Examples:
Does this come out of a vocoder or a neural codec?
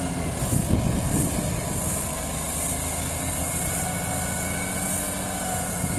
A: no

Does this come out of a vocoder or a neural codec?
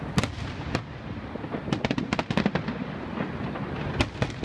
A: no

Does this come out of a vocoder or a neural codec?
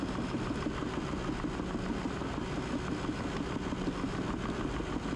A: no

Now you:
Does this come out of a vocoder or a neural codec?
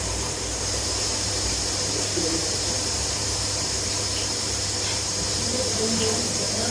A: yes